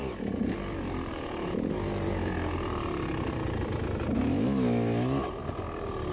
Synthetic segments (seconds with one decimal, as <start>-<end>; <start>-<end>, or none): none